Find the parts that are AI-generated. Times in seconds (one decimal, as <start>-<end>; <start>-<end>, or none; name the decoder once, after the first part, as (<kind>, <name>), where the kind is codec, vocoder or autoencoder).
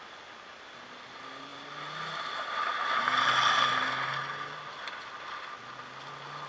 none